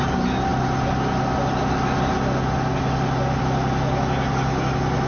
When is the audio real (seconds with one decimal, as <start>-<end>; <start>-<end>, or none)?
0.0-5.1